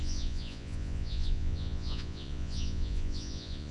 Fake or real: fake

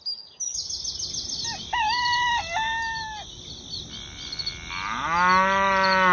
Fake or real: real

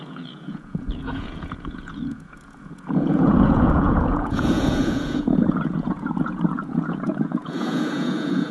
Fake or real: fake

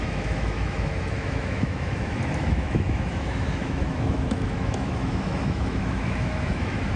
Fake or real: fake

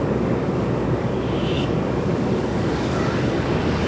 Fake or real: fake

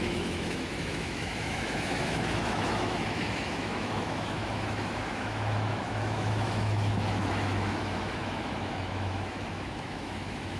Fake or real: fake